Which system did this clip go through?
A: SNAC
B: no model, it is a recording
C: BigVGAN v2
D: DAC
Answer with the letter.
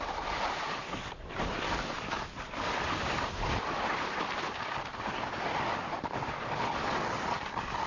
B